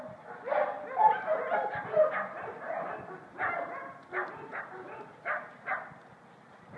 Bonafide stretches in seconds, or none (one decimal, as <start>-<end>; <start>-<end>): 0.0-6.8